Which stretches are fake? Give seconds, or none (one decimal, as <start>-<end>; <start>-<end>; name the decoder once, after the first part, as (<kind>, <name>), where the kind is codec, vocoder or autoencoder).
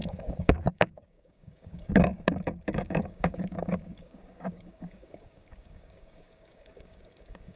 0.0-7.6 (codec, DAC)